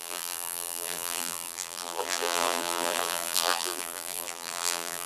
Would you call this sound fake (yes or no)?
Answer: yes